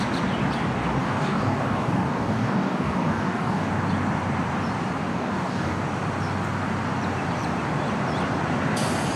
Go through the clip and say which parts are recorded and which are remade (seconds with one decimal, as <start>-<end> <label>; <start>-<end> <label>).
0.0-1.0 recorded; 1.0-3.7 remade; 3.7-5.1 recorded; 5.1-5.8 remade; 5.8-9.2 recorded